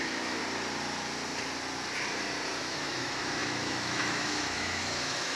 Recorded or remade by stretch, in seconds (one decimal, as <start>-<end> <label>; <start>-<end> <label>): 0.0-0.4 remade; 0.4-2.6 recorded; 2.6-5.4 remade